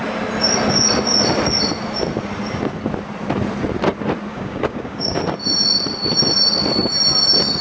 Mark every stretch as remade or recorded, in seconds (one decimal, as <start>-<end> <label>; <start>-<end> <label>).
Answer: 0.0-4.3 recorded; 4.3-5.2 remade; 5.2-7.6 recorded